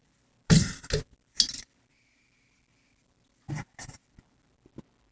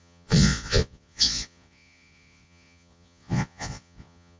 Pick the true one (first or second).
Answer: first